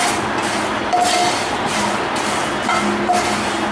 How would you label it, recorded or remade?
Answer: recorded